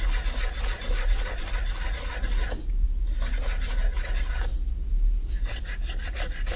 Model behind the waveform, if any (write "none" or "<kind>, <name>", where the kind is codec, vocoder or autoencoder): none